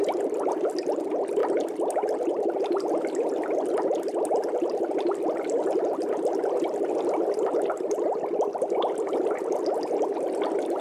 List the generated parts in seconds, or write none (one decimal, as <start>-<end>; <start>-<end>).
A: none